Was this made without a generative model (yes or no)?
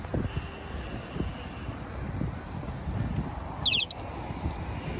yes